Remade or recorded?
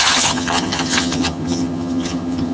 remade